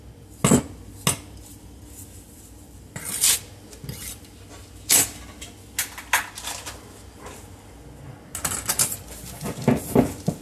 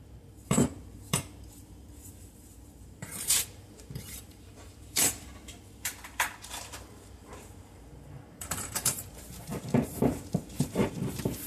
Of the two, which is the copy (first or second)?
second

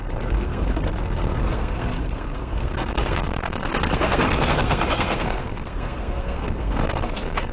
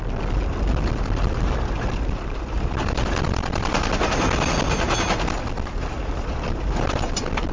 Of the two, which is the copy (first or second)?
first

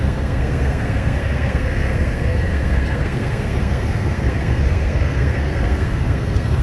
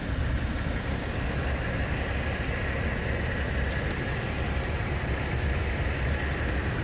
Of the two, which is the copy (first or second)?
first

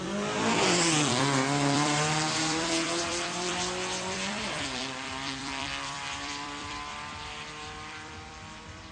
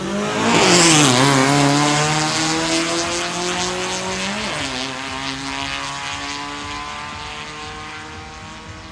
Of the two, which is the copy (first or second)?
first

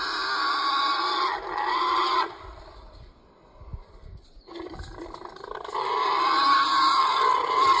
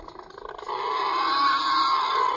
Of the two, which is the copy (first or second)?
first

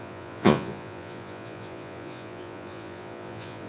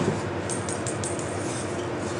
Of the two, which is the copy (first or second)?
first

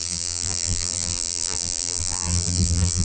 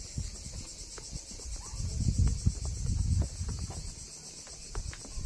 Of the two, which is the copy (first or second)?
first